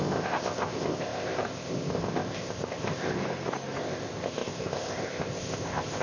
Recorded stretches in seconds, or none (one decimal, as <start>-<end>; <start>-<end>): 3.2-3.8